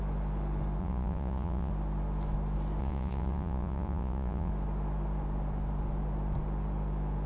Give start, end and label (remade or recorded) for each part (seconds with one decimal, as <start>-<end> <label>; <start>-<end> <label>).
0.0-0.8 recorded; 0.8-1.7 remade; 1.7-2.8 recorded; 2.8-4.5 remade; 4.5-7.3 recorded